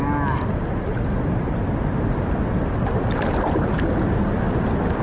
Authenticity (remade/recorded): recorded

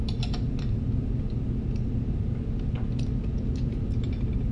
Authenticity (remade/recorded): recorded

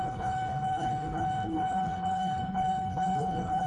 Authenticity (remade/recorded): remade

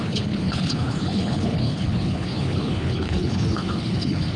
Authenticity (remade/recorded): remade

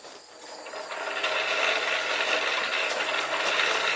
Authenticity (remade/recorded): recorded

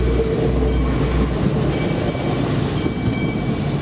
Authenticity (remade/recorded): recorded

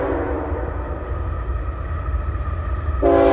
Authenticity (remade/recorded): recorded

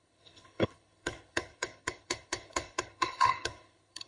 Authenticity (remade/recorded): remade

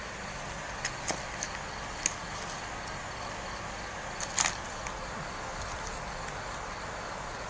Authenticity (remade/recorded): recorded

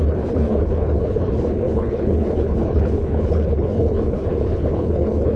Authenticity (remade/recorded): remade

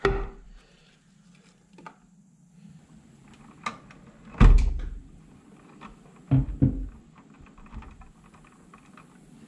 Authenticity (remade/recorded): recorded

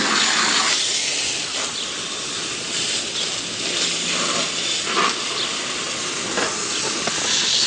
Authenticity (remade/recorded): recorded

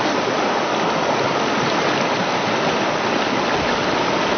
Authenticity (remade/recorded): recorded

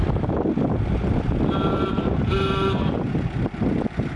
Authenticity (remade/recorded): recorded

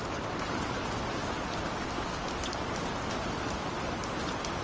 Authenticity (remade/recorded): recorded